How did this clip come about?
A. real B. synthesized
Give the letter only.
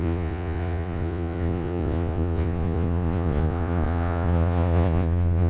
B